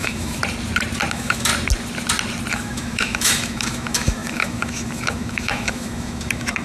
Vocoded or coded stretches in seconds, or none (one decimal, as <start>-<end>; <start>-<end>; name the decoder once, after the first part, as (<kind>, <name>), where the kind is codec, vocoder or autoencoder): 0.0-0.4 (autoencoder, DAC-VAE); 1.1-1.5; 2.5-6.6